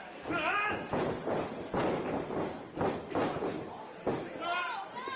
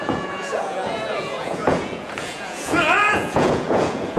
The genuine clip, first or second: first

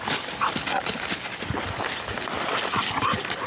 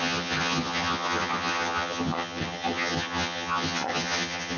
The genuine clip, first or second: first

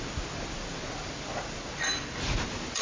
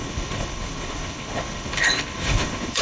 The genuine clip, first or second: first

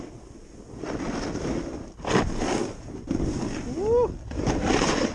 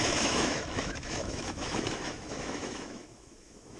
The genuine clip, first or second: first